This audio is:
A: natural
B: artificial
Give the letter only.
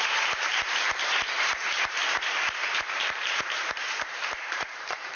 B